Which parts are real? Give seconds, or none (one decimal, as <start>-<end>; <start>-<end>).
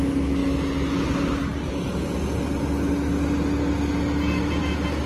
0.0-5.1